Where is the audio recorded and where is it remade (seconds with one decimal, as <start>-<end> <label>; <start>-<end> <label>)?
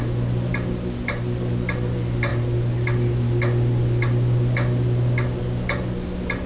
0.0-6.5 recorded